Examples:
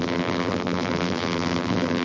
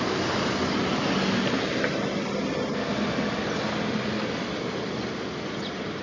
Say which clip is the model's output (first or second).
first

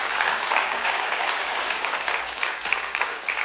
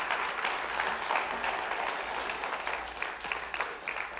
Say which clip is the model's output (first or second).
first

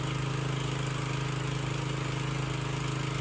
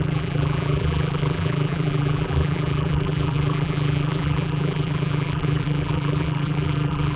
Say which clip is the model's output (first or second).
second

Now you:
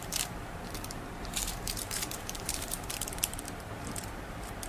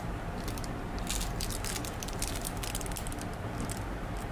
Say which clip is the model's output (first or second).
first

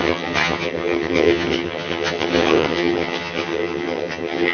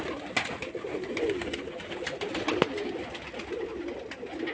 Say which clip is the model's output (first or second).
first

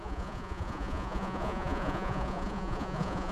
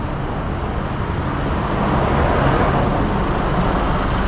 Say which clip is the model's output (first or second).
first